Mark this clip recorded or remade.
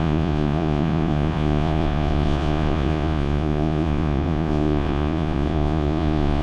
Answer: remade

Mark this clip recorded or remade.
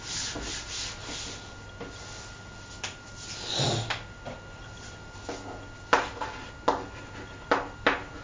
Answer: recorded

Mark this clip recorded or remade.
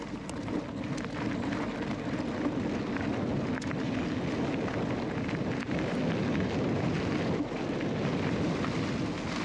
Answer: recorded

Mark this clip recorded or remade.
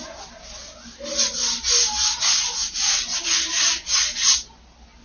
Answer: recorded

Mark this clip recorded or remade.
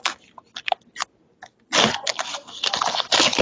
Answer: recorded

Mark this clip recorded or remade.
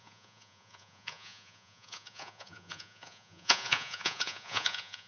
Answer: remade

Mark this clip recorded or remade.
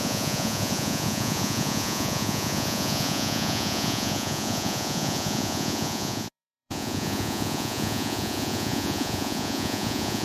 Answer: remade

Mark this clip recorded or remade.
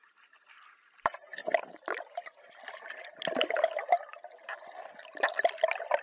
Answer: recorded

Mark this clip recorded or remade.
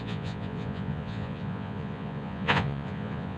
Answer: remade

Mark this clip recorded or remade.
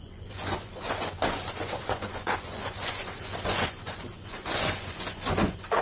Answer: remade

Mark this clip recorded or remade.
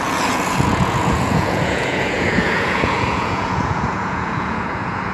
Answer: remade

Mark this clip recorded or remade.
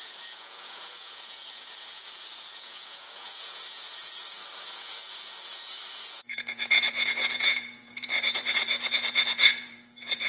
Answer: remade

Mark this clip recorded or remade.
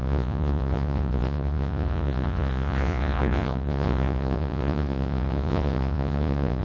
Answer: remade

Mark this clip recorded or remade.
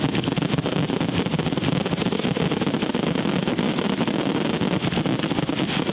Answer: recorded